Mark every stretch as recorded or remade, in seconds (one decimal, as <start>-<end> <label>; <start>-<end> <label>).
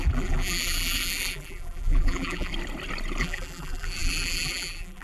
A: 0.0-2.5 remade; 2.5-3.2 recorded; 3.2-5.0 remade